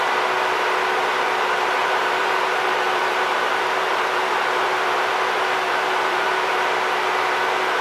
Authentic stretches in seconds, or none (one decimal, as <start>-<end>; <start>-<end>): 0.0-1.8; 6.5-7.8